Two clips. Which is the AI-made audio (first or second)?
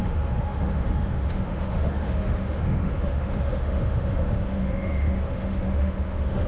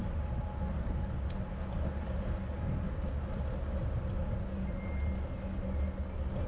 first